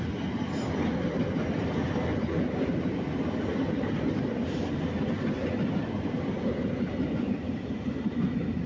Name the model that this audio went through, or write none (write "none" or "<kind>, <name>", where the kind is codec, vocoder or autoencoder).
none